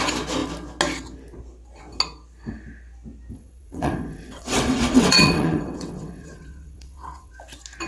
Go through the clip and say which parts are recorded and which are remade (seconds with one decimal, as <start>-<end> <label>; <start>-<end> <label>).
0.0-3.3 recorded; 3.3-7.3 remade; 7.3-7.9 recorded